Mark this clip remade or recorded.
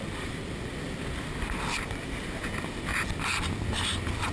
recorded